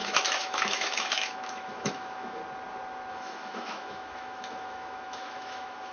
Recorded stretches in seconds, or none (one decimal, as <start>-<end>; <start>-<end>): 2.4-3.1